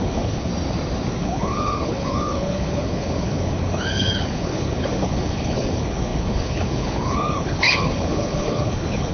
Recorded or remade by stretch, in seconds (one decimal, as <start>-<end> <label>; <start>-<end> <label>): 0.0-0.5 remade; 0.5-1.2 recorded; 1.2-9.1 remade